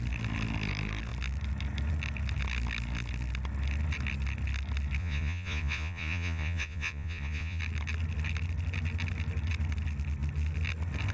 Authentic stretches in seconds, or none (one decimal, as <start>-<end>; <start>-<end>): 0.0-5.0; 7.6-11.1

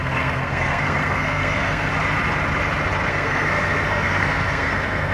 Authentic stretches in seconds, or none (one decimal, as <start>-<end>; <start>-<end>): 1.9-3.1

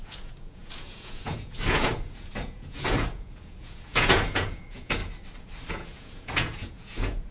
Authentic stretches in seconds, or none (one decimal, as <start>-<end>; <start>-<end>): 5.0-5.7

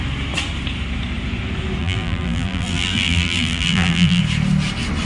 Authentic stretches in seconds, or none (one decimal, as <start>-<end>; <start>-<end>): 0.0-1.8; 4.2-5.1

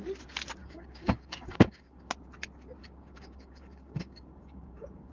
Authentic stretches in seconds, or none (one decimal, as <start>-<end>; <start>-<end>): 0.0-0.6; 2.1-2.8